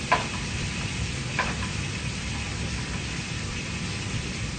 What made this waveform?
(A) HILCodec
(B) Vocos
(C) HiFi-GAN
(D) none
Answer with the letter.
D